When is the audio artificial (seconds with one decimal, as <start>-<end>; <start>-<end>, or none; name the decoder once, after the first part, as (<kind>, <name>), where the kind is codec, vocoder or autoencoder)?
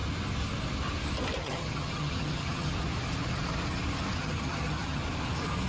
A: 1.4-2.7 (vocoder, HiFi-GAN); 4.2-5.0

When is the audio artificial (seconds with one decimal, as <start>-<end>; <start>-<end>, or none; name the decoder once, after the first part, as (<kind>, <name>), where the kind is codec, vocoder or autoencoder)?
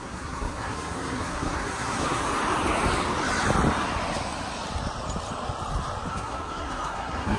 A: 0.0-2.2 (codec, SNAC); 6.1-7.4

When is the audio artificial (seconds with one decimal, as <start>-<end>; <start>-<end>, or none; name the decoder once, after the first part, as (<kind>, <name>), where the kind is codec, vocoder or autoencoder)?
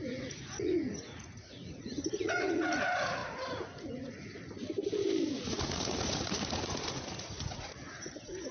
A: 0.0-4.3 (vocoder, Vocos); 5.4-8.5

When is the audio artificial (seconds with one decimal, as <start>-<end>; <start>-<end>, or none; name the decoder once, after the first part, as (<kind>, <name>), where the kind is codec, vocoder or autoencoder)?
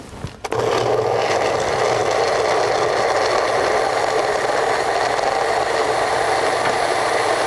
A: none